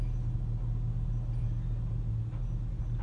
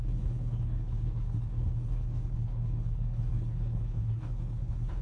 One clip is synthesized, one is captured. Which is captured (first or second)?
first